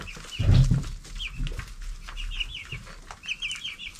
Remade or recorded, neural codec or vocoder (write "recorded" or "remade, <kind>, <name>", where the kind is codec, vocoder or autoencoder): recorded